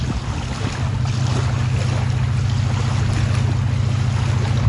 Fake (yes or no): no